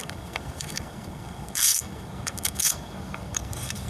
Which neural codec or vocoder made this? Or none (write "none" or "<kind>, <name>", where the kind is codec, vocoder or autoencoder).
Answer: codec, SNAC